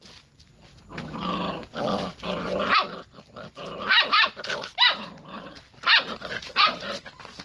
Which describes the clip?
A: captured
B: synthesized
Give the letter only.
A